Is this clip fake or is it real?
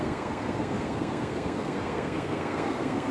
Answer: fake